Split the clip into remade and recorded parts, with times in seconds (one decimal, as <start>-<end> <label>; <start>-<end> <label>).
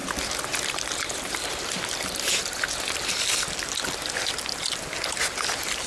0.0-1.2 recorded; 1.2-2.4 remade; 2.4-5.9 recorded